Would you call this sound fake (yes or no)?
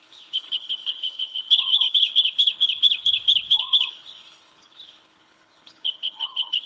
yes